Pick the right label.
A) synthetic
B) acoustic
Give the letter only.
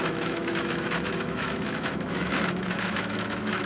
A